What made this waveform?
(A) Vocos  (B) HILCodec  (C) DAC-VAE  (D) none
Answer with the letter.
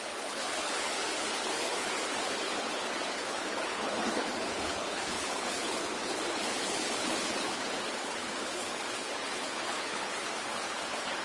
B